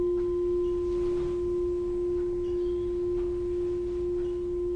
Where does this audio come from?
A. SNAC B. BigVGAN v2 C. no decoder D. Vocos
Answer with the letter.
C